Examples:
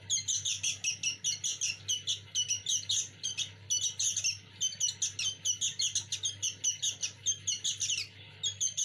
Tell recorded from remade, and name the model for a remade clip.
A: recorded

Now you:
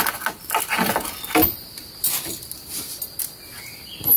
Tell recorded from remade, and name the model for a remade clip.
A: recorded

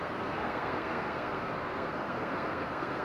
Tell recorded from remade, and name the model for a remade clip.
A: remade, codec, SNAC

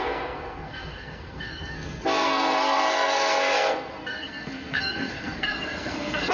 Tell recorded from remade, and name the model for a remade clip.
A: remade, codec, SNAC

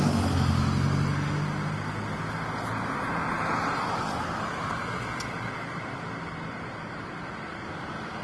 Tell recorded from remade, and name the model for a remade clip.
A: recorded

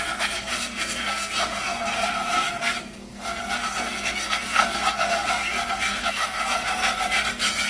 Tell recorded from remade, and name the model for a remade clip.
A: remade, codec, SNAC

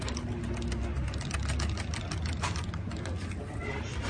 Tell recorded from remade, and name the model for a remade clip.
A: recorded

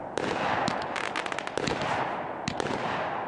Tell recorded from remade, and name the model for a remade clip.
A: recorded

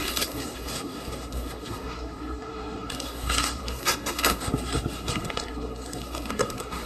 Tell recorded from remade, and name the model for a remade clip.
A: remade, codec, SNAC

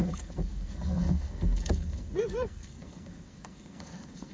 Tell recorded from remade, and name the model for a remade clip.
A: remade, codec, SNAC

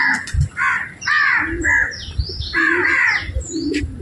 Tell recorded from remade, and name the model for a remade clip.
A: recorded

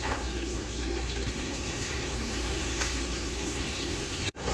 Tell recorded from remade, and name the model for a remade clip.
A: remade, codec, SNAC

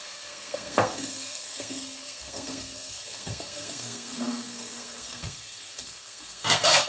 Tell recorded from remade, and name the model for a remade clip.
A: remade, codec, SNAC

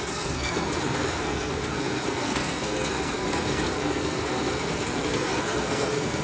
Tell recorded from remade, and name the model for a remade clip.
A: remade, codec, SNAC